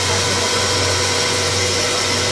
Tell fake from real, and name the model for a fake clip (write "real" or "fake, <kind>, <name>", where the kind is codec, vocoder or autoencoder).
fake, vocoder, Vocos